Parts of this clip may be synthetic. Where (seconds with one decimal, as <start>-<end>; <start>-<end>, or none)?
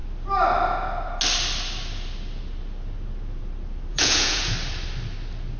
3.9-4.5